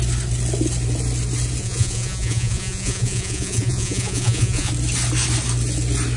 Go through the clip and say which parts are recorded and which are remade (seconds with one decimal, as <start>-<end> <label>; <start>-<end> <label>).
0.0-1.6 recorded; 1.6-4.7 remade; 4.7-6.2 recorded